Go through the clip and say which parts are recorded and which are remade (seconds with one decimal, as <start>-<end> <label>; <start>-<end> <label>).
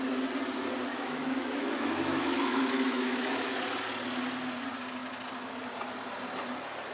0.0-0.9 recorded; 0.9-3.6 remade; 3.6-6.9 recorded